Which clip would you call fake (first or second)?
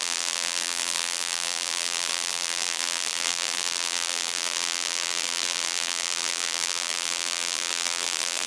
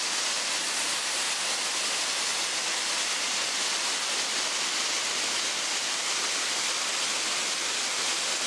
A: first